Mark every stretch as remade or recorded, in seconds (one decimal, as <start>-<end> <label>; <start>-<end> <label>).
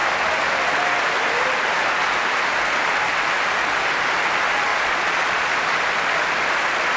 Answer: 0.0-4.7 recorded; 4.7-5.5 remade; 5.5-7.0 recorded